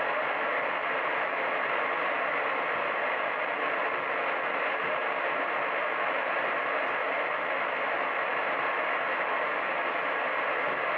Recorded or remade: remade